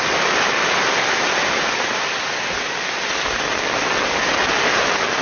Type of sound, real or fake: real